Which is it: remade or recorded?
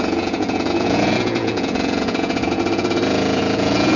remade